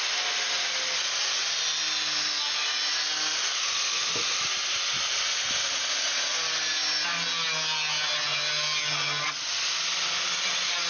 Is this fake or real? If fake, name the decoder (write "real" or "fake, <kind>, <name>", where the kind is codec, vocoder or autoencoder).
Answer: real